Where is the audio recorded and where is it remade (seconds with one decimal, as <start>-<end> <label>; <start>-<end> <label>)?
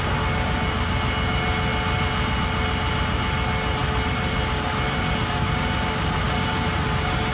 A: 0.0-7.3 recorded